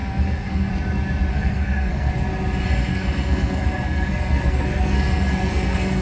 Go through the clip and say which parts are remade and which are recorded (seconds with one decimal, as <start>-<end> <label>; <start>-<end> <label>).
0.0-0.7 remade; 0.7-1.3 recorded; 1.3-2.1 remade; 2.1-2.9 recorded; 2.9-6.0 remade